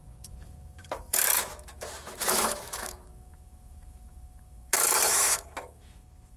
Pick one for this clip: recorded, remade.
remade